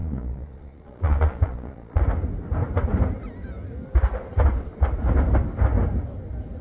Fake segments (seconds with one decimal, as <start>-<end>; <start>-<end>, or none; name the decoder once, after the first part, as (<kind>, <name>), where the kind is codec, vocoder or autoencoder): 0.0-2.0 (vocoder, Vocos)

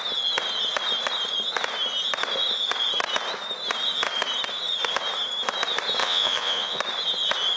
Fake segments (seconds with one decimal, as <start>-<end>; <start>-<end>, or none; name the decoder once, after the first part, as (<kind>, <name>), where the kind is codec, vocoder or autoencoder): 6.0-6.8 (vocoder, Vocos)

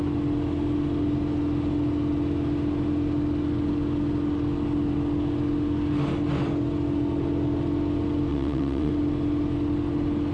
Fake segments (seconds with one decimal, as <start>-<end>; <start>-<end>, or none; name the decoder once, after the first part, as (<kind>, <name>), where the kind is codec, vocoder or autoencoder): 8.3-8.9 (vocoder, Vocos)